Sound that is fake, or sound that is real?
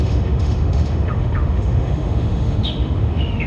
fake